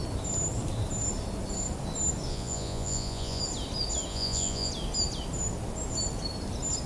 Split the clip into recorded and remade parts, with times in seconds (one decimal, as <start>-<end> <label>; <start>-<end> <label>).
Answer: 0.0-2.3 recorded; 2.3-3.4 remade; 3.4-4.1 recorded; 4.1-4.7 remade; 4.7-6.9 recorded